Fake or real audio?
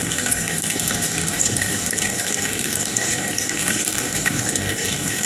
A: fake